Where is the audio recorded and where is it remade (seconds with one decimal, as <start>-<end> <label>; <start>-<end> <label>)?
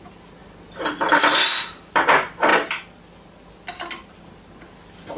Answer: 0.0-5.2 recorded